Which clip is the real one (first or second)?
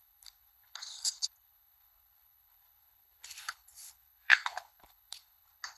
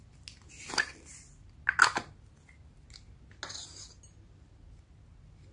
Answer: second